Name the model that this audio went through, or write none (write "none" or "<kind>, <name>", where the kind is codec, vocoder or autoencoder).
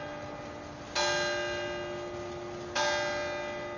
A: none